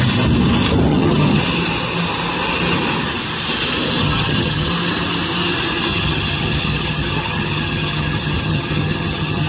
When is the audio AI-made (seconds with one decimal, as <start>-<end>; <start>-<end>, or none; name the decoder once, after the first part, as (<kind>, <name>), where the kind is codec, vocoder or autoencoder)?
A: 0.9-1.4 (vocoder, HiFi-GAN); 4.0-4.7; 5.9-9.5